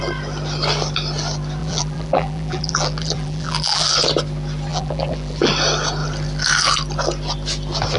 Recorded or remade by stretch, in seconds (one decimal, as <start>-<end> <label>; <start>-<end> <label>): 0.0-1.6 recorded; 1.6-3.9 remade; 3.9-4.7 recorded; 4.7-5.5 remade; 5.5-8.0 recorded